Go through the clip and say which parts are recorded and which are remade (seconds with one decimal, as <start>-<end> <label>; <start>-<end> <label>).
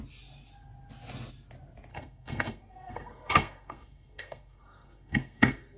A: 0.0-1.9 recorded; 1.9-5.8 remade